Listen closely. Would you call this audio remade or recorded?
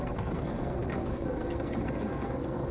remade